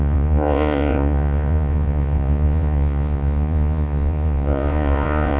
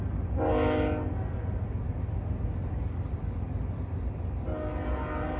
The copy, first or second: first